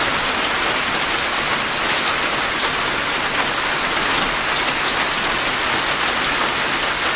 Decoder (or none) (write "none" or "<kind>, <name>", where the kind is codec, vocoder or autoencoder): none